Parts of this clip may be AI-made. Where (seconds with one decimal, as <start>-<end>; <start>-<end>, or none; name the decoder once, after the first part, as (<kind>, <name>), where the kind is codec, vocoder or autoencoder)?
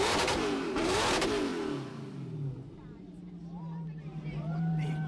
0.0-1.5 (vocoder, BigVGAN v2); 2.7-5.1